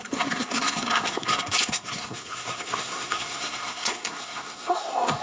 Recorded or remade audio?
remade